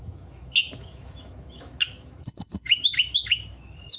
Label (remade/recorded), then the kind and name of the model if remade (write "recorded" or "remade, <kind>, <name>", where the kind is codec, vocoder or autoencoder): remade, autoencoder, DAC-VAE